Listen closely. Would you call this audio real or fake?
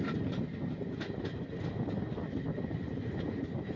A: real